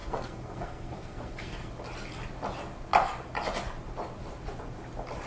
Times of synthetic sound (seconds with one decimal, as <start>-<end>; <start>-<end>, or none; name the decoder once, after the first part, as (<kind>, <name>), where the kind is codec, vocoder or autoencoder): 0.0-1.7 (codec, SNAC)